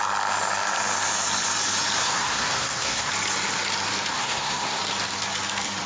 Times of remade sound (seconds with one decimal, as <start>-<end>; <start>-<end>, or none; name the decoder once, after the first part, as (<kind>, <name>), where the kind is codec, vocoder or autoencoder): 2.0-3.1 (codec, SNAC); 4.1-4.8